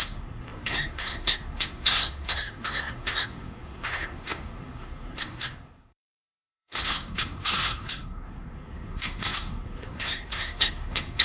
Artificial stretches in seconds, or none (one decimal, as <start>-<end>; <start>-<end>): 0.0-11.2

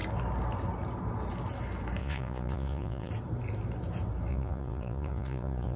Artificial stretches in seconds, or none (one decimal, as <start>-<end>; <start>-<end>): 2.0-3.1; 4.3-5.8

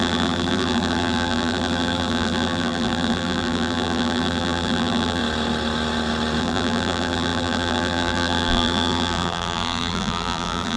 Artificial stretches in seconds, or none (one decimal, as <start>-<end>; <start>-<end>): 0.0-5.2; 6.4-10.8

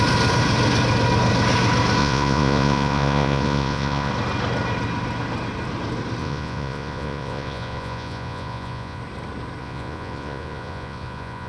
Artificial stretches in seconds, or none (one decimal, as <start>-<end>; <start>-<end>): 2.0-4.1; 6.2-9.0; 9.6-11.5

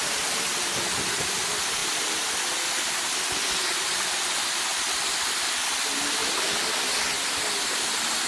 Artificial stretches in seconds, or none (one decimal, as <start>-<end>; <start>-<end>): 4.7-5.3

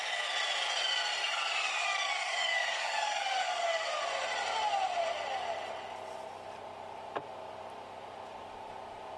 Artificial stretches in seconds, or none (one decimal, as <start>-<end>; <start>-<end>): 1.2-4.0